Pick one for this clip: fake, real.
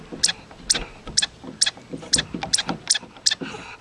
real